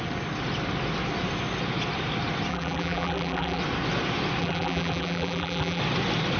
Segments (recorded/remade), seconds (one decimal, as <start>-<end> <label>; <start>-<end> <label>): 0.0-2.5 recorded; 2.5-3.6 remade; 3.6-4.4 recorded; 4.4-5.8 remade; 5.8-6.4 recorded